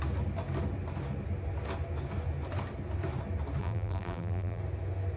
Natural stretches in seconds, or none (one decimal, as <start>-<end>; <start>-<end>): 0.0-3.6; 4.6-5.2